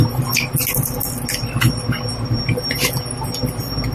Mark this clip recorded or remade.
recorded